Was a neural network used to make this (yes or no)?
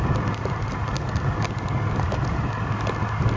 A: no